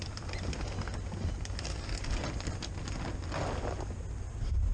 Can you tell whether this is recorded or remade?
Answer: recorded